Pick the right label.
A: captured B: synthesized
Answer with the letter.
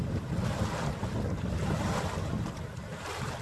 A